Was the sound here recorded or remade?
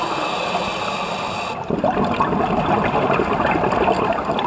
recorded